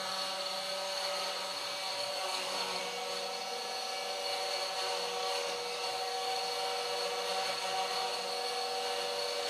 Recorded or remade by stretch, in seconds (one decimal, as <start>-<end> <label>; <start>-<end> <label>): 0.0-1.9 recorded; 1.9-2.8 remade; 2.8-5.2 recorded; 5.2-6.4 remade; 6.4-9.5 recorded